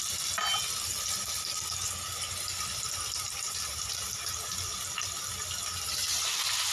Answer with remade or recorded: recorded